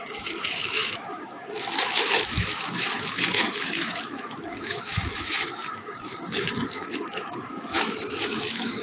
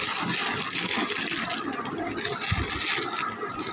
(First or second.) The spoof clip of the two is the first